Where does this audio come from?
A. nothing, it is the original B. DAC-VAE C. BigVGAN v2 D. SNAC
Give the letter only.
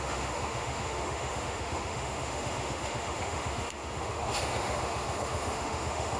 B